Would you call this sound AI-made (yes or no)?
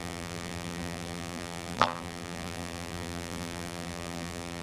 yes